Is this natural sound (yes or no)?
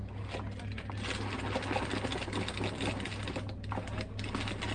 yes